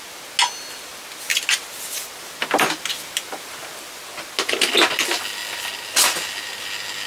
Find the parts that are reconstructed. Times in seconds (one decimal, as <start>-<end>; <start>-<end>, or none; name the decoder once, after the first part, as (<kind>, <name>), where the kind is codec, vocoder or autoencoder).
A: none